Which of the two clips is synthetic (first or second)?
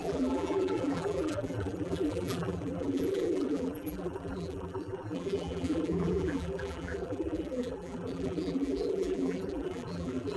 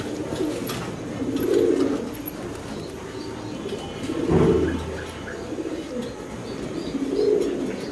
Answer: first